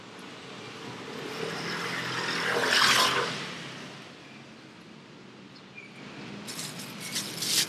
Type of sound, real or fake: real